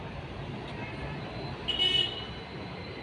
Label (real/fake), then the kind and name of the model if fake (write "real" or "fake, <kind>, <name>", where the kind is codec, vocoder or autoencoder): real